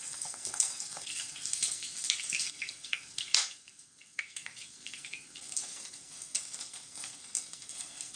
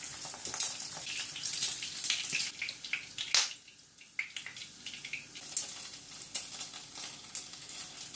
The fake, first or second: first